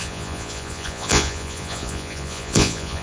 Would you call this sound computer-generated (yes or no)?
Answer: yes